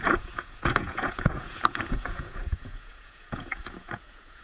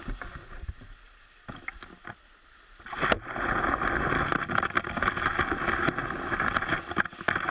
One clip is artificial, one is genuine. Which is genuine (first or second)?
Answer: second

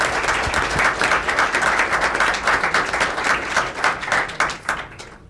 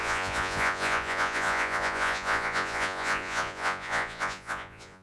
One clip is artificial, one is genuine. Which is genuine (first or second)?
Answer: first